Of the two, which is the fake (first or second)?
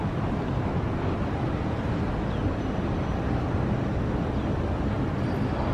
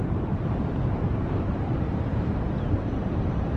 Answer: second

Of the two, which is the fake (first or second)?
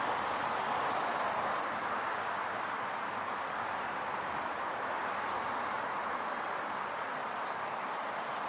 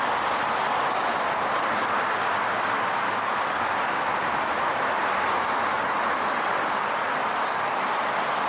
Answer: first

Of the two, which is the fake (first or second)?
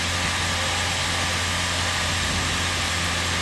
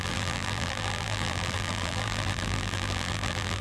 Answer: second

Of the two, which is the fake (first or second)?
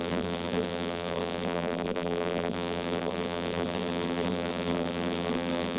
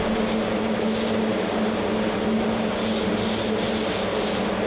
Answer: first